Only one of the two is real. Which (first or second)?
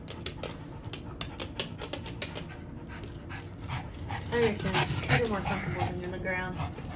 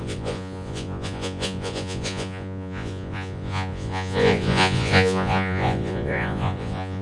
first